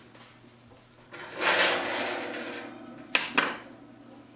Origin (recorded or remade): recorded